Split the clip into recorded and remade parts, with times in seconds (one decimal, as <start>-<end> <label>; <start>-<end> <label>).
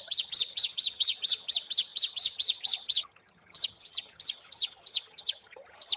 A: 0.0-6.0 remade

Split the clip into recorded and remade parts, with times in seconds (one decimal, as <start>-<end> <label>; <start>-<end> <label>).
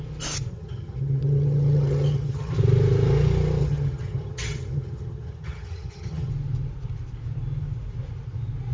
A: 0.0-0.5 recorded; 0.5-2.5 remade; 2.5-3.6 recorded; 3.6-6.3 remade; 6.3-8.7 recorded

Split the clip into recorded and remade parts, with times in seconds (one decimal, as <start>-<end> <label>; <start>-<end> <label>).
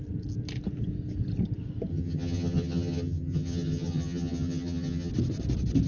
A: 0.0-1.9 recorded; 1.9-5.1 remade; 5.1-5.9 recorded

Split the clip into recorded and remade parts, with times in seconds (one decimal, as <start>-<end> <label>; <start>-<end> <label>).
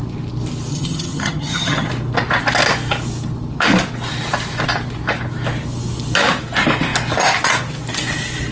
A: 0.0-0.7 recorded; 0.7-1.9 remade; 1.9-8.5 recorded